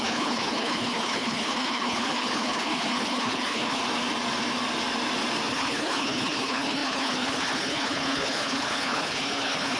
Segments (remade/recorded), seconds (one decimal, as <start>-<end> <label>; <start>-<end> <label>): 0.0-3.8 remade; 3.8-5.5 recorded; 5.5-9.8 remade